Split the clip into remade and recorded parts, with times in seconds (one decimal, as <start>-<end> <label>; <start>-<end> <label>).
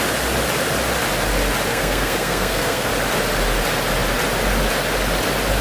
0.0-1.7 recorded; 1.7-2.9 remade; 2.9-5.6 recorded